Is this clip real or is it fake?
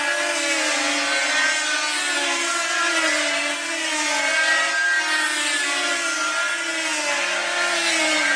real